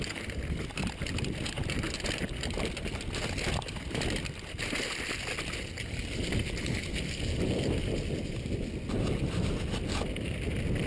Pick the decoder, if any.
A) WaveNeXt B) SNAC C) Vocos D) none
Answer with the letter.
D